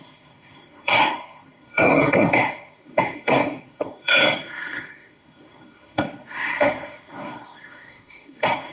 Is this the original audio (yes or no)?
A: no